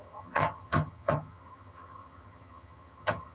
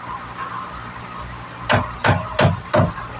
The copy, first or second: first